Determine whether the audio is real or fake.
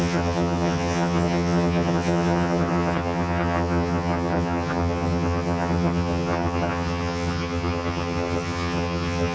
fake